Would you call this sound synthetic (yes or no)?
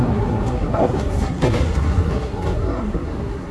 yes